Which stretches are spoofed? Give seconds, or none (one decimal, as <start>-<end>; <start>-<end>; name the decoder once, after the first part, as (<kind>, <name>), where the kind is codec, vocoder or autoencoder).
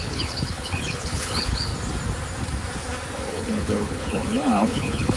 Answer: 0.0-1.7 (codec, HILCodec); 3.3-5.2